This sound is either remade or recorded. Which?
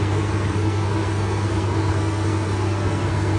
remade